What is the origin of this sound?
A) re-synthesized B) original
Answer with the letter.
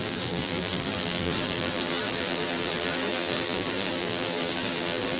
A